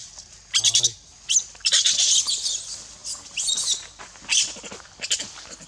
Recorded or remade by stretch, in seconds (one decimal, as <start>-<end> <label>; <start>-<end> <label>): 0.0-5.7 recorded